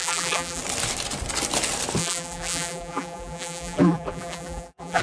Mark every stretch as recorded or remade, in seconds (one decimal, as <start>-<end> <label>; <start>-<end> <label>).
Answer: 0.0-0.6 remade; 0.6-2.0 recorded; 2.0-5.0 remade